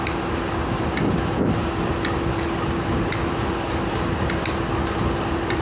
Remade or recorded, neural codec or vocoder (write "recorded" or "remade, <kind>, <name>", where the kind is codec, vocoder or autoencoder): recorded